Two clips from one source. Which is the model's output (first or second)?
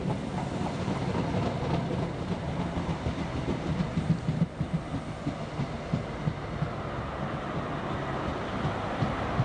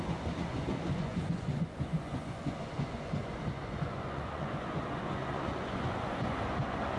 second